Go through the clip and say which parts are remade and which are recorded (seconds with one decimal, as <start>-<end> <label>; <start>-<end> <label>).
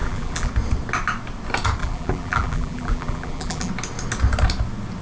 0.0-0.5 remade; 0.5-1.8 recorded; 1.8-3.7 remade; 3.7-5.0 recorded